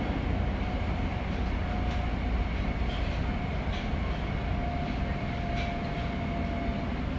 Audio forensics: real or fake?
real